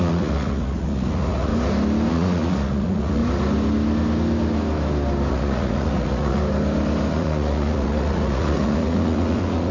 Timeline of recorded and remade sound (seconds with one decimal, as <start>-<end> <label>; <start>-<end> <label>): 0.0-1.5 remade; 1.5-2.1 recorded; 2.1-3.2 remade; 3.2-5.3 recorded; 5.3-6.4 remade; 6.4-7.1 recorded; 7.1-9.7 remade